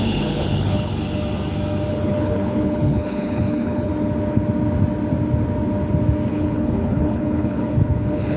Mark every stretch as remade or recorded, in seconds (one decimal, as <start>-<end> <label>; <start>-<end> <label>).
0.0-0.9 remade; 0.9-1.9 recorded; 1.9-3.9 remade; 3.9-6.3 recorded; 6.3-8.4 remade